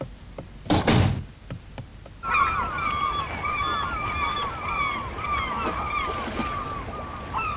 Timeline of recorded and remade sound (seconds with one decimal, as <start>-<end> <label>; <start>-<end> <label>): 0.0-7.6 recorded